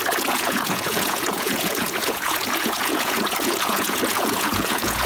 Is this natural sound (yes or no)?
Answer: no